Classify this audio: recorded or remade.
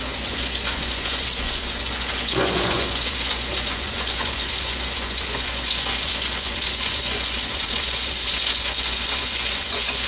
remade